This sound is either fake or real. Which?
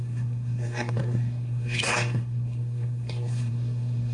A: fake